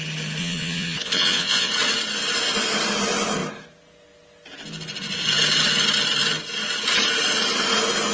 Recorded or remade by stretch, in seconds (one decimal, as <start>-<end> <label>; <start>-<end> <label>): 0.0-0.4 recorded; 0.4-1.7 remade; 1.7-8.1 recorded